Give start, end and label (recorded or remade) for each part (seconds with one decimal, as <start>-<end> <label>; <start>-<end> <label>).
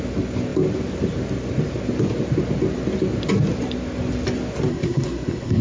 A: 0.0-4.7 recorded; 4.7-5.6 remade